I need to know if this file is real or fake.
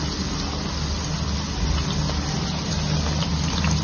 real